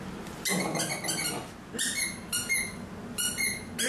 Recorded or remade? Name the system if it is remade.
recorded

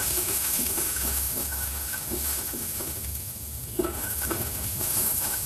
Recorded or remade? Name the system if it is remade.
remade, autoencoder, DAC-VAE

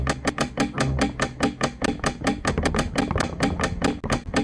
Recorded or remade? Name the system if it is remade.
recorded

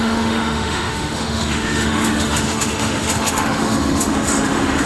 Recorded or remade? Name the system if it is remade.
remade, autoencoder, DAC-VAE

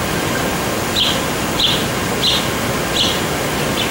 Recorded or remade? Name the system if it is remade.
recorded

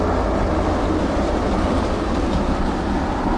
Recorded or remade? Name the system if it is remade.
recorded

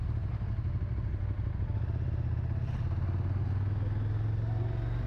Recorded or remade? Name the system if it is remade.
recorded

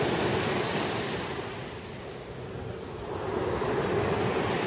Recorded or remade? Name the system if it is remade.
recorded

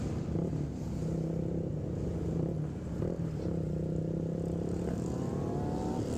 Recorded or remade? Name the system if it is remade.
recorded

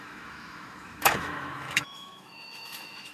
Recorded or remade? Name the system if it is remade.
remade, autoencoder, DAC-VAE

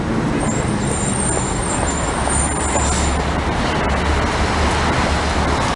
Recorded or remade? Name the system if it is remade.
recorded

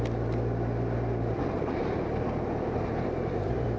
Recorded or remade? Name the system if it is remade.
recorded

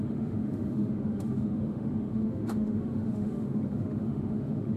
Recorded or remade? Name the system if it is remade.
remade, autoencoder, DAC-VAE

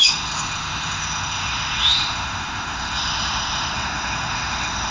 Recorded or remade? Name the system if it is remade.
remade, autoencoder, DAC-VAE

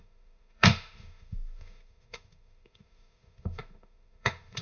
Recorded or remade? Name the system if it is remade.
remade, autoencoder, DAC-VAE